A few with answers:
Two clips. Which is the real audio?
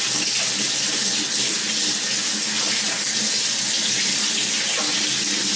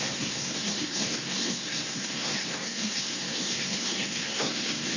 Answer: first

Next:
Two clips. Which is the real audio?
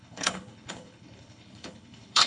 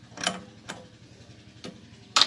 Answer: second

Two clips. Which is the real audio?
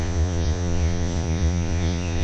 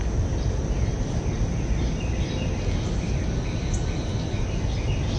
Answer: second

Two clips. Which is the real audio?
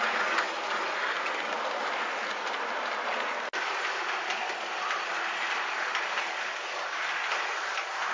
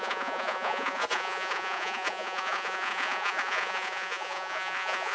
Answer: first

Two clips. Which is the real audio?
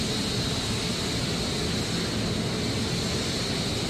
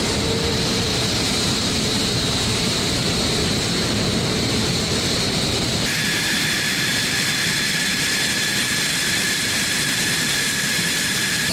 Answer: first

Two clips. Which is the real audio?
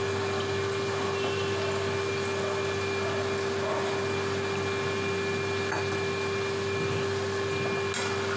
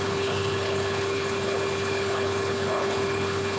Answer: first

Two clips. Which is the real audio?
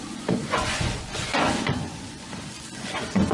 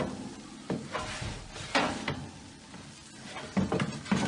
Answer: second